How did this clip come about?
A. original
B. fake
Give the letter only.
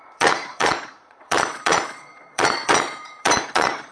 B